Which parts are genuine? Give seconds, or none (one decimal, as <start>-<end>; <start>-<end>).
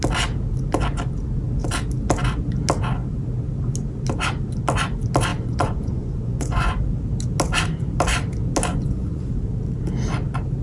0.0-5.3; 6.7-8.7; 9.3-10.6